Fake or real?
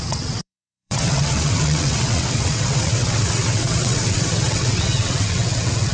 fake